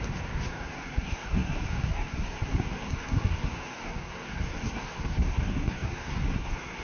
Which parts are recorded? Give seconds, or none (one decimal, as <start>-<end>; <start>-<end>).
none